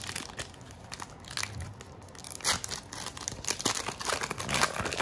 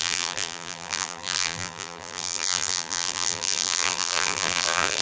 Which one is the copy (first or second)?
second